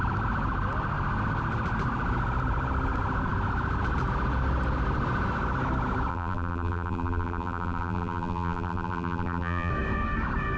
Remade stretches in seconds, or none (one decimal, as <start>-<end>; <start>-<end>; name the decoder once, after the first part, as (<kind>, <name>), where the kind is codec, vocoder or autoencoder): 6.1-9.7 (vocoder, BigVGAN v2)